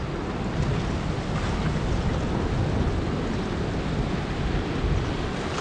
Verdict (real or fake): real